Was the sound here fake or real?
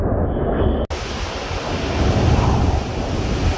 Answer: real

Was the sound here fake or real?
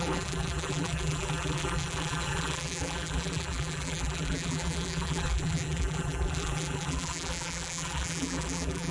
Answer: fake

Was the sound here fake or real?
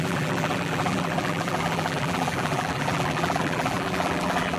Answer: fake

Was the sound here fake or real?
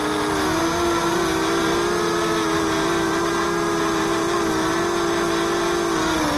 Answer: real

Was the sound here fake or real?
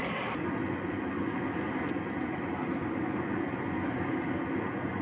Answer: fake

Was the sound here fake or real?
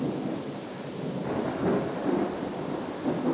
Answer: real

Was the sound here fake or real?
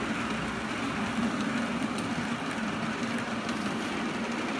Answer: fake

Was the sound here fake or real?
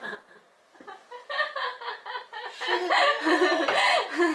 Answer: real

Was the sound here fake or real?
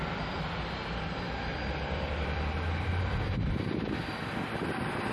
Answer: fake